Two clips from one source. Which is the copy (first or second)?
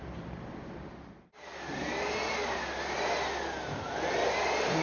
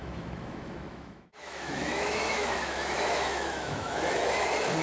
second